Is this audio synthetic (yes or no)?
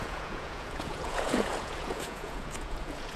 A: yes